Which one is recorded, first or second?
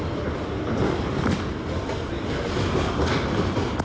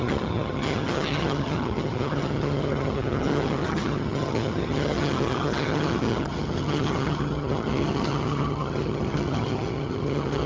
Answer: first